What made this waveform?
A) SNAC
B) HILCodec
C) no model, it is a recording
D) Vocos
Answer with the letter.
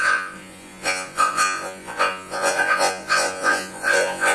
D